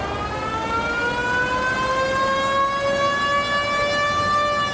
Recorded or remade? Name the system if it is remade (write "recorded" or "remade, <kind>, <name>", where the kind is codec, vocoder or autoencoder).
recorded